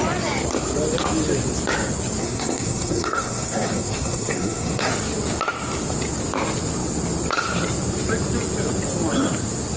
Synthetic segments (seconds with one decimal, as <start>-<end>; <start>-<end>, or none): 2.2-4.9